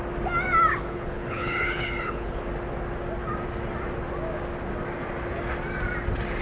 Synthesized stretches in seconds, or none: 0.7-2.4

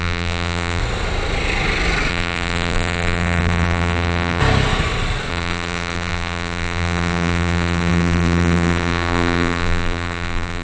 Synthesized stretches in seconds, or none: 0.0-0.8; 2.1-4.4; 5.3-10.6